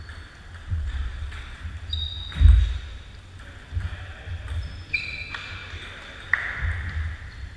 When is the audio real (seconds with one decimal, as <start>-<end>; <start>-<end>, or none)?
0.0-0.6; 1.6-7.6